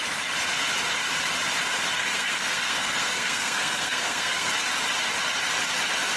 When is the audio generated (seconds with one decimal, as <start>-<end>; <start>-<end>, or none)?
2.0-4.5

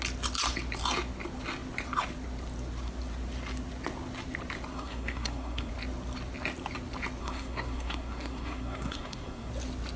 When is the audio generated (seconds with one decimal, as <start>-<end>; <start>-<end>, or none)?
4.7-5.7; 7.2-9.5

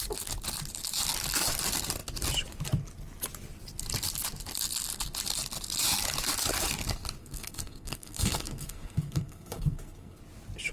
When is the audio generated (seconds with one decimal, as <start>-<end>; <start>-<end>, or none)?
7.2-10.2

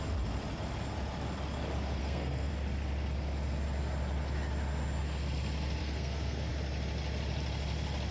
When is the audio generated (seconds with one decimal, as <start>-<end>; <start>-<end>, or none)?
2.0-2.5; 5.8-6.5

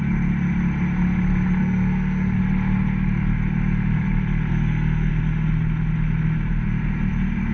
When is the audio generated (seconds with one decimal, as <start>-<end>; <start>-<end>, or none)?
1.6-2.4; 4.5-5.1

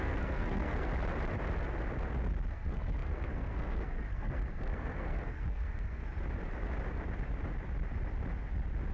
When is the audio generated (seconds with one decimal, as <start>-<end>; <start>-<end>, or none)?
0.0-0.9; 2.5-6.0

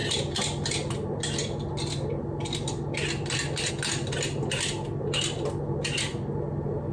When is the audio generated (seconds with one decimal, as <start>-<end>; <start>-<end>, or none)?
none